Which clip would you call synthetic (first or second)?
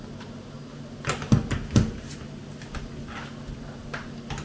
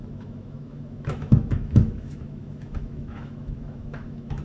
second